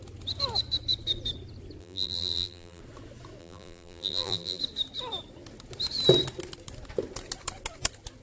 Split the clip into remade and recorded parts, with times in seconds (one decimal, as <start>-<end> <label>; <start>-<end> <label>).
0.0-1.8 recorded; 1.8-2.8 remade; 2.8-3.4 recorded; 3.4-4.6 remade; 4.6-8.2 recorded